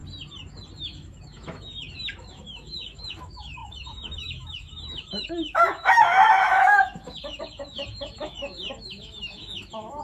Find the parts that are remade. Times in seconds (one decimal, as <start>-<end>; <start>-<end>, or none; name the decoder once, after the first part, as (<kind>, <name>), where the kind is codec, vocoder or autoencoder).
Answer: 0.8-10.0 (autoencoder, DAC-VAE)